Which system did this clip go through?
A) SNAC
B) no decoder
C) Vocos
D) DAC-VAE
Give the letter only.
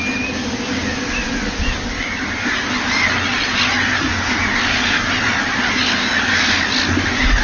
B